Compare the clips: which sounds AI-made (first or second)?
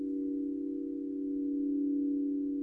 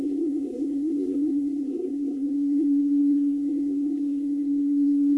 second